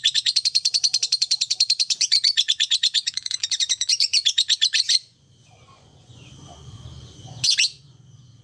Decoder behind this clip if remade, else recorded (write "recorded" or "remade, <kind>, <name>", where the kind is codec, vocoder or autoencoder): remade, vocoder, Vocos